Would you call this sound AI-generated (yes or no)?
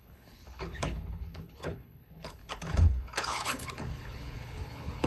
yes